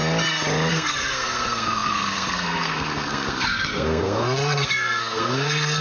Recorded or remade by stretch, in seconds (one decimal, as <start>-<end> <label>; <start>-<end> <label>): 0.0-0.7 recorded; 0.7-5.8 remade